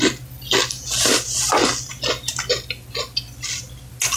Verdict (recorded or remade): recorded